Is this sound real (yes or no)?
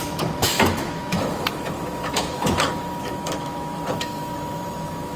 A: no